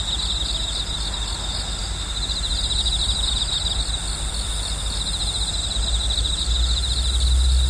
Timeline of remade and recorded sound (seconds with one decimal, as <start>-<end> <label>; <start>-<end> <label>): 0.0-7.7 recorded